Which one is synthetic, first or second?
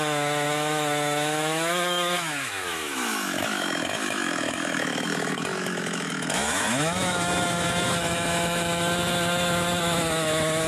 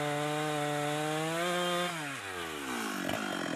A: first